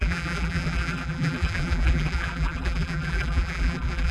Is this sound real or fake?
fake